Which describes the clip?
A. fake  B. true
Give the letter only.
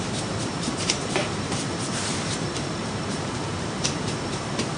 A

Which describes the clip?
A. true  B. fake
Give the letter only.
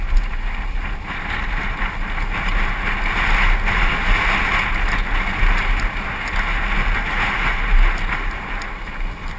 A